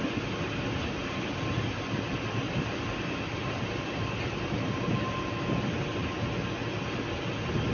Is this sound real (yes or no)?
yes